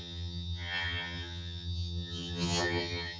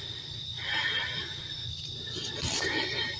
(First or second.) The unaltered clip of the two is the second